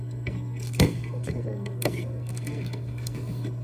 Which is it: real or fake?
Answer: fake